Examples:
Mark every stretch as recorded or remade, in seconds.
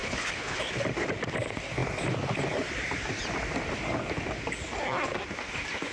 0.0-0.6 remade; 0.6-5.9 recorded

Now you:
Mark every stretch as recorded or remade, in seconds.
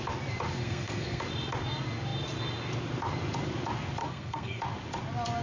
0.0-0.6 recorded; 0.6-1.2 remade; 1.2-4.0 recorded; 4.0-4.6 remade; 4.6-5.4 recorded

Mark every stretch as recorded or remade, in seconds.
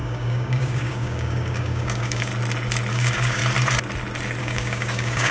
0.0-2.3 remade; 2.3-2.9 recorded; 2.9-3.4 remade; 3.4-4.4 recorded; 4.4-5.3 remade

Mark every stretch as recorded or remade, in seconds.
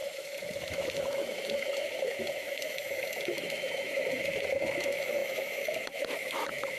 0.0-6.8 remade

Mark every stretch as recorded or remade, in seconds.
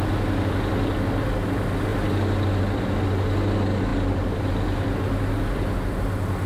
0.0-6.5 recorded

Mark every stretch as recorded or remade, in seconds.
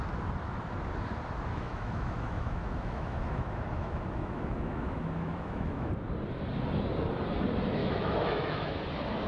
0.0-1.5 recorded; 1.5-5.9 remade; 5.9-7.8 recorded; 7.8-8.8 remade; 8.8-9.3 recorded